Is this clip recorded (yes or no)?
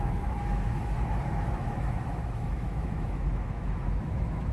no